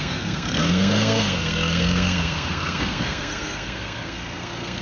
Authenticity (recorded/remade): remade